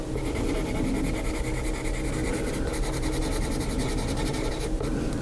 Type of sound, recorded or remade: recorded